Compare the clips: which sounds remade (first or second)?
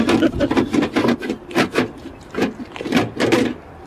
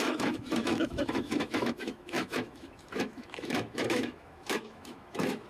second